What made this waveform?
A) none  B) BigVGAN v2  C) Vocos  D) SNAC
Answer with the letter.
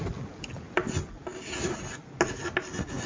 A